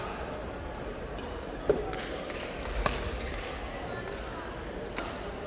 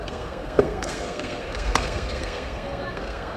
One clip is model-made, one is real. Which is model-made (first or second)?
second